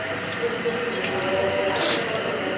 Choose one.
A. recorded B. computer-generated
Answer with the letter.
A